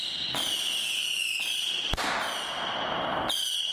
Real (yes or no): yes